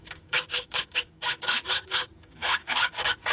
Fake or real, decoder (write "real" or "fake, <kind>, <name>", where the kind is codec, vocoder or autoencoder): fake, codec, DAC